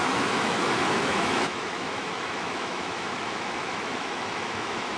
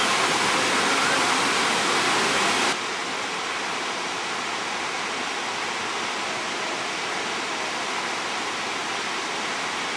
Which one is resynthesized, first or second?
first